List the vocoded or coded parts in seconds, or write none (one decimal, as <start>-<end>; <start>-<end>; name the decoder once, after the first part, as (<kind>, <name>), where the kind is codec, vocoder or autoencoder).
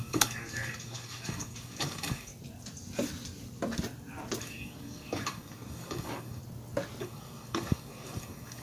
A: 0.0-2.3 (codec, DAC); 4.4-6.4; 7.0-8.6